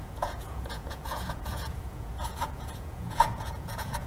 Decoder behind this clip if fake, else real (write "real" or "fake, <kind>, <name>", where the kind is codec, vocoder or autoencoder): fake, vocoder, Vocos